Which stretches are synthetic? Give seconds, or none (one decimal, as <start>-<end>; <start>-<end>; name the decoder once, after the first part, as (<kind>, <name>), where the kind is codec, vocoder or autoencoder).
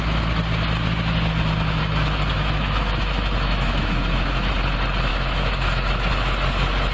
1.8-4.5 (autoencoder, DAC-VAE); 5.1-6.1